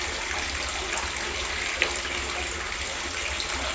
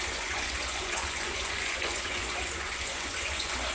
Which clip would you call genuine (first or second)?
first